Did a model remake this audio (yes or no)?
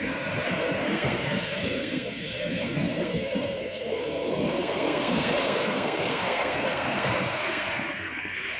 yes